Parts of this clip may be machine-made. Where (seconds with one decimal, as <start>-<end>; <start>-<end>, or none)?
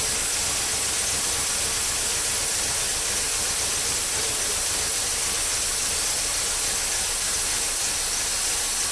none